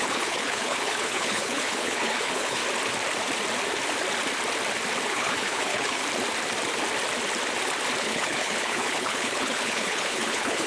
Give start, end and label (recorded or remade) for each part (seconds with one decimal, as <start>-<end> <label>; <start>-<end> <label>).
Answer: 0.0-2.6 remade; 2.6-5.1 recorded; 5.1-6.0 remade; 6.0-8.0 recorded; 8.0-10.7 remade